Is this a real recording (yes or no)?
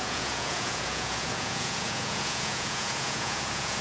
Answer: no